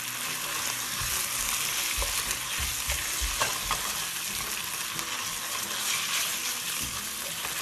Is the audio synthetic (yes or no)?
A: no